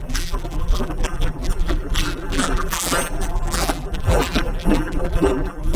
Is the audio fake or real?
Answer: fake